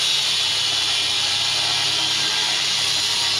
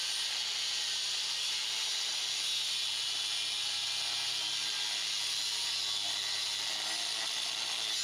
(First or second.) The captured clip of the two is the second